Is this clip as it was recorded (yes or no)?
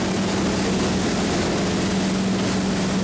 yes